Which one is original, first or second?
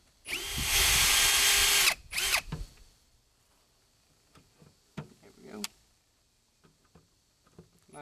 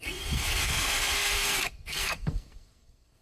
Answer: first